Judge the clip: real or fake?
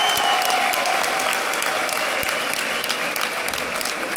real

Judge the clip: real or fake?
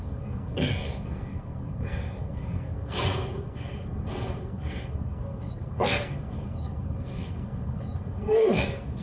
fake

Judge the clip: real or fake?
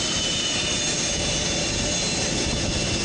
real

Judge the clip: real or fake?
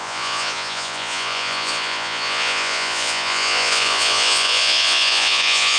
fake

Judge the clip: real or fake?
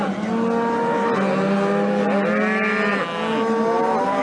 real